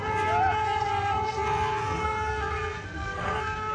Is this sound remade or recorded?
remade